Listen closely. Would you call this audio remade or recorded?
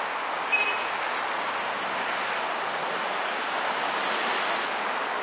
recorded